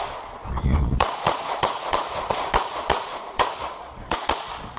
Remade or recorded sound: remade